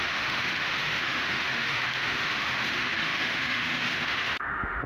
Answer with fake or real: fake